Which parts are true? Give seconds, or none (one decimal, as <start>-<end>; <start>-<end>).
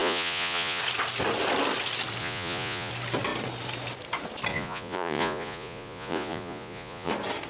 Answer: 0.8-2.2; 2.9-4.5; 7.1-7.5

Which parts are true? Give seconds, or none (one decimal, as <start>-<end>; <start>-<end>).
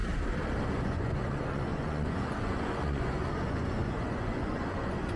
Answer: 0.0-0.7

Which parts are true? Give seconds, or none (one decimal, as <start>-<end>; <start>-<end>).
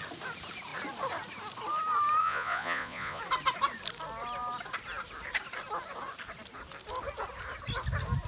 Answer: 0.0-2.2; 3.2-8.3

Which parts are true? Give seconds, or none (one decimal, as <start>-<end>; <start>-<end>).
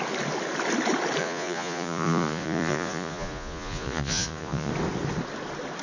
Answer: 0.0-1.2; 4.7-5.8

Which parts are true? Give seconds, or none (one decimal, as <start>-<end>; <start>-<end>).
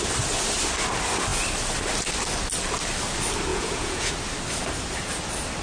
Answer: 0.0-3.5; 4.1-5.6